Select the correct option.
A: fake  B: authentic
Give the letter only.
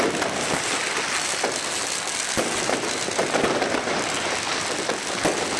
B